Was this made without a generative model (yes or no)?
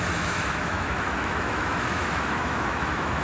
no